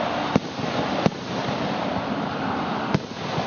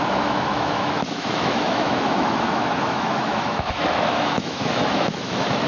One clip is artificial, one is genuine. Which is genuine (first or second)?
first